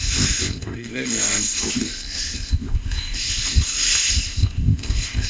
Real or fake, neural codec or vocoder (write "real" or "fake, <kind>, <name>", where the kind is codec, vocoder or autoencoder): fake, codec, ZipCodec